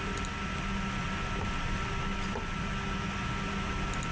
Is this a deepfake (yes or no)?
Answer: no